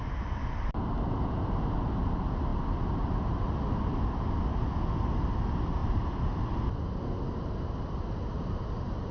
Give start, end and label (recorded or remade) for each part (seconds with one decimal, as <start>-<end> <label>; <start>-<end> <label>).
0.0-9.1 recorded